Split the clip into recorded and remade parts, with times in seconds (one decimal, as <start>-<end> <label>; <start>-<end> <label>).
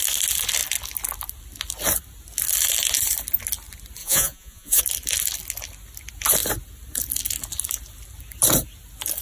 0.0-4.0 recorded; 4.0-4.8 remade; 4.8-9.2 recorded